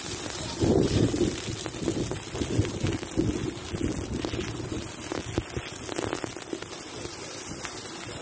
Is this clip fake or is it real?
real